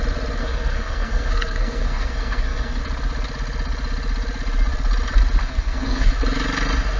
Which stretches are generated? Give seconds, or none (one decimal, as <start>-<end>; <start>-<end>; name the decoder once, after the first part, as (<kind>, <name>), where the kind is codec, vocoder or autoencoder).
0.4-2.8 (codec, SNAC); 5.4-6.1